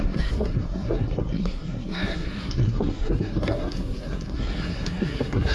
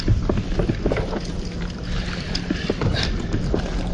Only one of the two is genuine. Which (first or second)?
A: second